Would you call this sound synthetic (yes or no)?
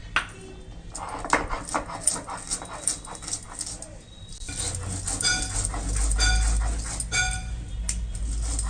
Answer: no